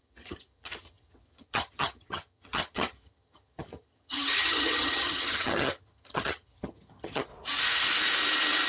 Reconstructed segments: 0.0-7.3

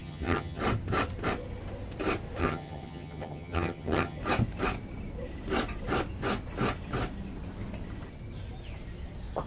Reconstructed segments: 0.0-0.6; 2.4-4.2

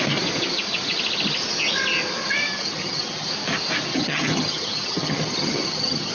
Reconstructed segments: 2.5-3.3; 3.9-6.1

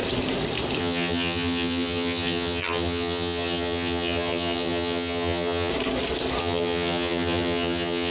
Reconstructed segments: 0.8-5.7; 6.4-8.1

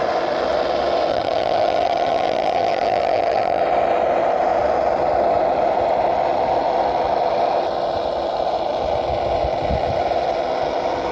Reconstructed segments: 1.1-3.6

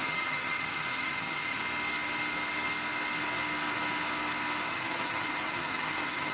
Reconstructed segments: 0.0-1.6; 4.7-6.3

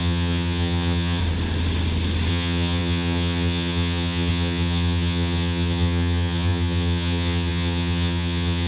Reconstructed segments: 0.0-1.2; 2.3-8.7